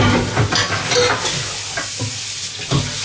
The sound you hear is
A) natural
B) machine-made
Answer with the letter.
A